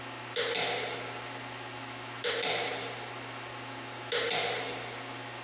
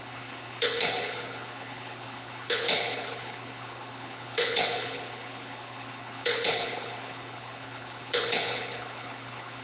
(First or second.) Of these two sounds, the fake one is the second